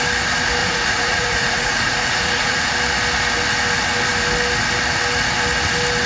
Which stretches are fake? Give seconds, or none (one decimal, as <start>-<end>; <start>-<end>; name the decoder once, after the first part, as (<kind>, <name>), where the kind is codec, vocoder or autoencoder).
0.6-2.7 (vocoder, Vocos)